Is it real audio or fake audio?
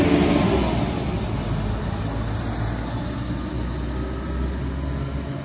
real